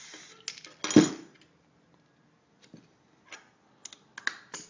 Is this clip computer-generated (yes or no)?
no